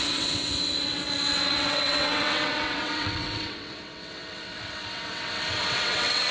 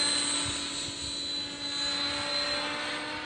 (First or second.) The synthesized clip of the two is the first